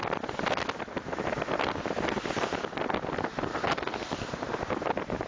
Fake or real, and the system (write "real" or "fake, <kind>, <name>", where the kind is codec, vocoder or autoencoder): real